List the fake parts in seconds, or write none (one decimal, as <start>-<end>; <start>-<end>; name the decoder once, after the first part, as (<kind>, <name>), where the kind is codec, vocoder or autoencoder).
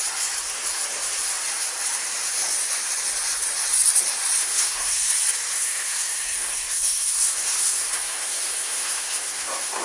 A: 4.4-5.1 (codec, SNAC); 5.5-9.8